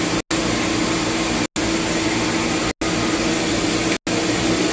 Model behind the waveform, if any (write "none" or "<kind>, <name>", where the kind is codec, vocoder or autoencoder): none